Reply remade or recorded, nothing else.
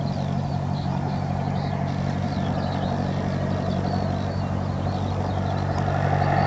recorded